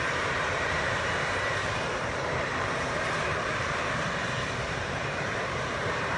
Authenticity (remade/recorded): remade